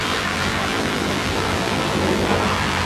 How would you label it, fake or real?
fake